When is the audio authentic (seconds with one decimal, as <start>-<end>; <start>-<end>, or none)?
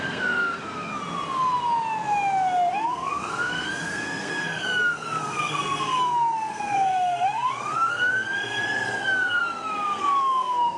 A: 0.9-2.7